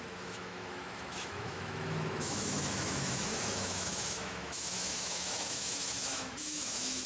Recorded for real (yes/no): no